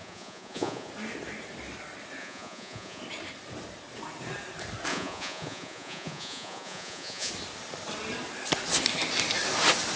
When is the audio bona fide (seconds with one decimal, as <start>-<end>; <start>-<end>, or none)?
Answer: 0.9-2.2; 3.0-4.9; 7.3-10.0